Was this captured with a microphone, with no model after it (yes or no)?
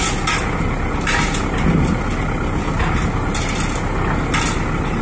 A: yes